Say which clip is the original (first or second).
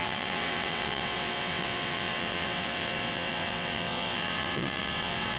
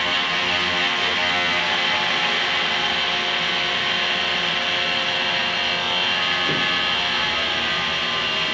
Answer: second